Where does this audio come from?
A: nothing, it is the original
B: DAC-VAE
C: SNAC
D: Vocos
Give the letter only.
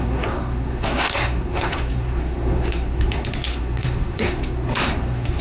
C